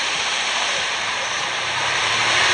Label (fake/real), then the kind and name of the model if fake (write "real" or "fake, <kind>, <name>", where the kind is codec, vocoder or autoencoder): fake, vocoder, BigVGAN v2